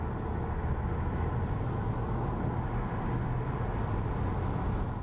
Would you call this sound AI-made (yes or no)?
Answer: no